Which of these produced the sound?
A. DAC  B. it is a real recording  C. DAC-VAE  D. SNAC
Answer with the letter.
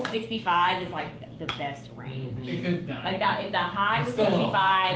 A